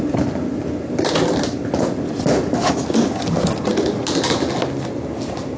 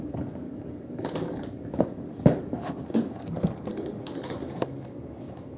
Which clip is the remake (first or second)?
second